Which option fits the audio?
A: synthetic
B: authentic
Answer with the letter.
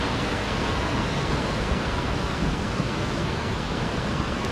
A